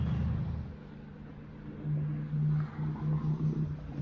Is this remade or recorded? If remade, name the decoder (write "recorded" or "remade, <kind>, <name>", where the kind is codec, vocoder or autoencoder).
recorded